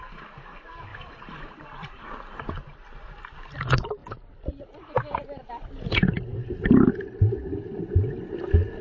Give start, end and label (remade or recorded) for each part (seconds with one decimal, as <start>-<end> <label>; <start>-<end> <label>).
0.0-0.9 recorded; 0.9-2.4 remade; 2.4-4.0 recorded; 4.0-5.5 remade; 5.5-8.8 recorded